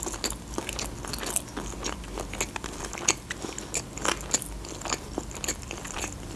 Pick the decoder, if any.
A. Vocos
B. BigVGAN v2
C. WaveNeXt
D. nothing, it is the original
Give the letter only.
D